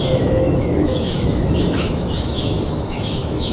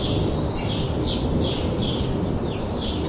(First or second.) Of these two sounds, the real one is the second